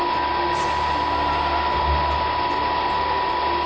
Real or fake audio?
real